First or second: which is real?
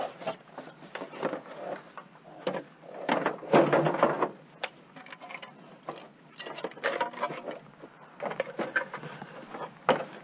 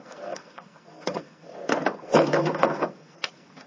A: first